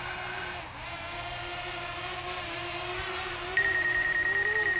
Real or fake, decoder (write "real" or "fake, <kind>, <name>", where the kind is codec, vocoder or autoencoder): fake, vocoder, BigVGAN v2